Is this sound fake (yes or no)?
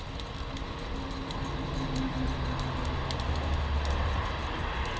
no